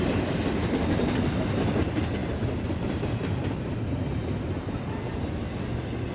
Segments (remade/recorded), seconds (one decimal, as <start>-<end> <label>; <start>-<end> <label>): 0.0-6.1 recorded